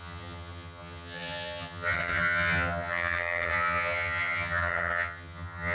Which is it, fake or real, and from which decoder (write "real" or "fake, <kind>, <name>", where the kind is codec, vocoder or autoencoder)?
fake, vocoder, HiFi-GAN